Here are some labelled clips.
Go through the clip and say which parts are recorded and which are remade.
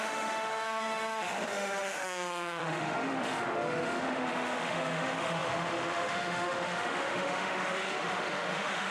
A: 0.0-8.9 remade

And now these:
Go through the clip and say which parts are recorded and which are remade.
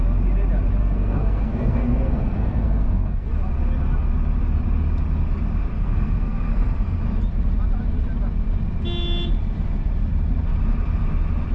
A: 0.0-0.8 recorded; 0.8-3.3 remade; 3.3-5.7 recorded; 5.7-7.0 remade; 7.0-11.5 recorded